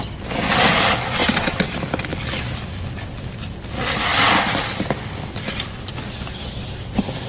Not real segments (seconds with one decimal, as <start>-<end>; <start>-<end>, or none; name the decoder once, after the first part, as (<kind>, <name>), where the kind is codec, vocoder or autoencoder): 1.2-1.7 (vocoder, WaveNeXt)